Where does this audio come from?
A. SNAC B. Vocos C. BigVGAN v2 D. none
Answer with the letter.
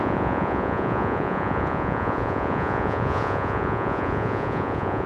B